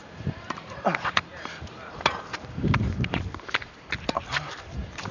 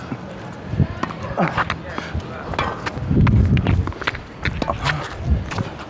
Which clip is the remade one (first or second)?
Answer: first